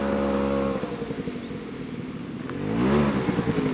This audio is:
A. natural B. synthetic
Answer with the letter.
A